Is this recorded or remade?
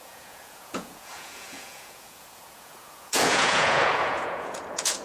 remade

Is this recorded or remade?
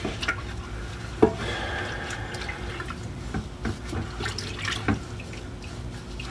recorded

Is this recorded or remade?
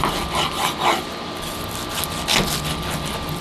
recorded